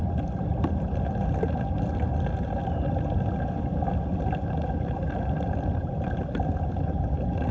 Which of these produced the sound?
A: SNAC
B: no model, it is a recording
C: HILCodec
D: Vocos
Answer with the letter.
B